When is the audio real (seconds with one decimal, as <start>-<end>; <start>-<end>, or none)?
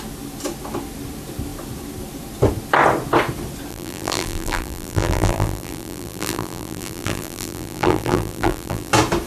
0.0-3.7; 8.9-9.3